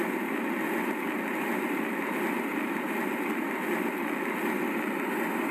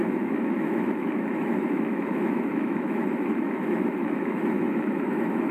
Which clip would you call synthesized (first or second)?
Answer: second